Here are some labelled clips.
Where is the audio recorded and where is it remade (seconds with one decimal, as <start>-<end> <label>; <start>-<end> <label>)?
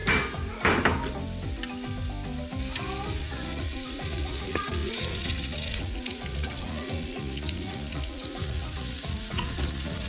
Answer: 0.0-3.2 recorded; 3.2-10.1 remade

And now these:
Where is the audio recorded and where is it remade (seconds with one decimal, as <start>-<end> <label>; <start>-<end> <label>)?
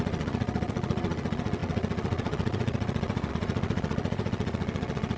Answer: 0.0-5.2 remade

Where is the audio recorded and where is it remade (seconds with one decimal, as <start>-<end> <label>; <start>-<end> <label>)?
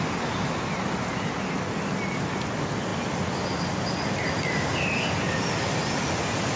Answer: 0.0-6.6 recorded